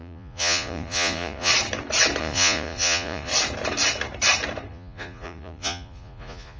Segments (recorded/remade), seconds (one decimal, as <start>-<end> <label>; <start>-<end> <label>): 0.0-1.5 remade; 1.5-2.2 recorded; 2.2-3.3 remade; 3.3-4.7 recorded; 4.7-6.6 remade